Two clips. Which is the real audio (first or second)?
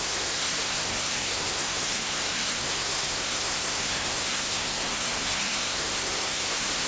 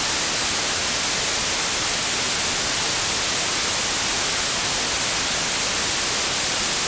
second